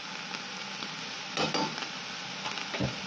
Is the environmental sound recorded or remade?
recorded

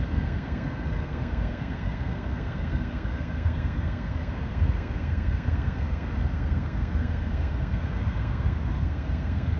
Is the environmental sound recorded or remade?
remade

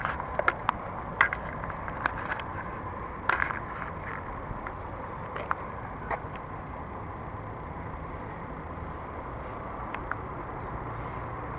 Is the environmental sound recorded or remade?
recorded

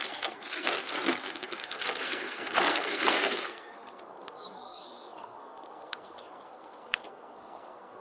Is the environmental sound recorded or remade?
remade